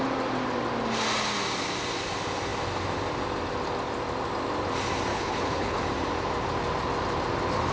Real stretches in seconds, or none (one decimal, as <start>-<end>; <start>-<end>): 0.0-5.1; 5.8-7.7